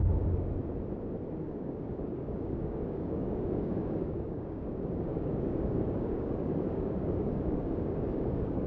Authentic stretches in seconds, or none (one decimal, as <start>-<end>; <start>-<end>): 0.6-1.3